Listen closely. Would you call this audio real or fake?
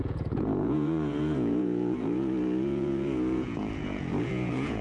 fake